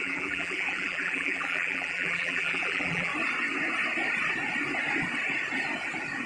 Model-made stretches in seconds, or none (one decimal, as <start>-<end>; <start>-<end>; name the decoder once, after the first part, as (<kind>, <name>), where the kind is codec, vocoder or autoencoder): 0.0-3.1 (vocoder, BigVGAN v2)